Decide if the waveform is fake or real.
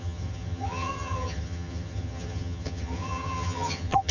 fake